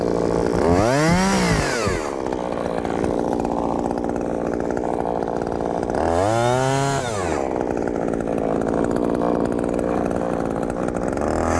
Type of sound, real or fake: real